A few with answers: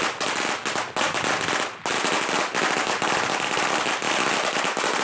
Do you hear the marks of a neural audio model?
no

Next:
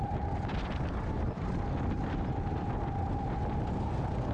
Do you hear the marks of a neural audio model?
no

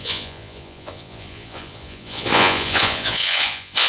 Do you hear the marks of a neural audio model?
yes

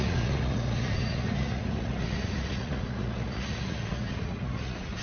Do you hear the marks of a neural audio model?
yes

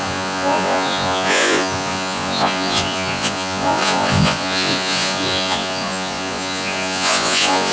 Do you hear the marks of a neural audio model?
yes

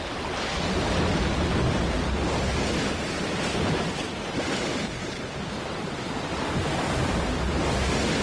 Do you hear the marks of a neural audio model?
no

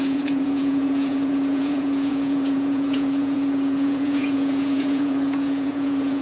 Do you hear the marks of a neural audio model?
yes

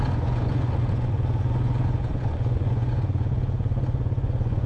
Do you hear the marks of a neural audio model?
yes